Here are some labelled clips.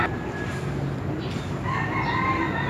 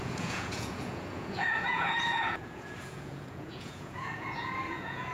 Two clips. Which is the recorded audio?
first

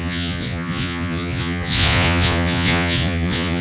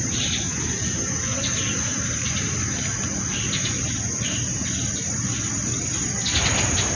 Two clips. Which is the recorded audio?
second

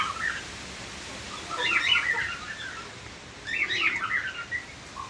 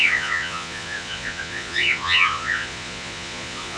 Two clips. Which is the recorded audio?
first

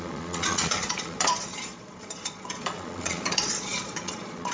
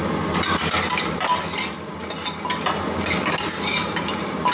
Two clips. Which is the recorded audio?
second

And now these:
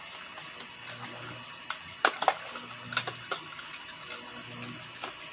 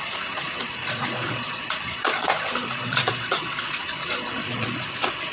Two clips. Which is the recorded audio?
first